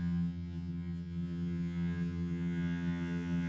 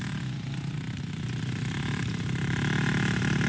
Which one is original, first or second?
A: second